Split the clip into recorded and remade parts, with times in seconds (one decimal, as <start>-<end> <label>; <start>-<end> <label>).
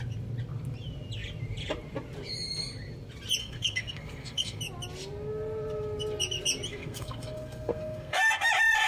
0.0-3.4 recorded; 3.4-4.6 remade; 4.6-6.7 recorded; 6.7-8.5 remade; 8.5-8.9 recorded